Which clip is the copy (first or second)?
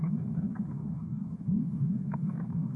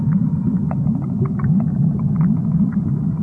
first